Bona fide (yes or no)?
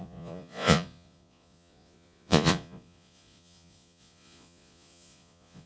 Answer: no